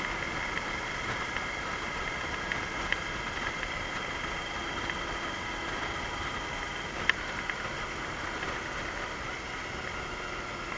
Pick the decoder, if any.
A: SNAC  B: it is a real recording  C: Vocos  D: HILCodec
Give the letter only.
B